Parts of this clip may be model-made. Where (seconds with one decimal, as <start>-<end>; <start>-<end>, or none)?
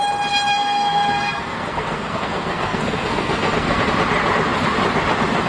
0.5-3.8